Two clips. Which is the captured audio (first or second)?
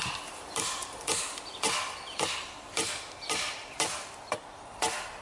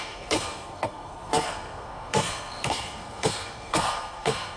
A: first